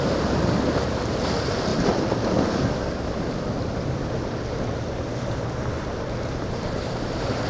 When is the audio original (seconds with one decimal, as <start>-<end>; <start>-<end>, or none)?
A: 1.7-6.2